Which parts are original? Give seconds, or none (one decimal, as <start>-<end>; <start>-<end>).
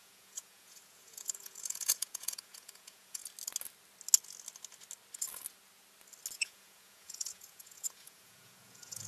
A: 3.2-6.3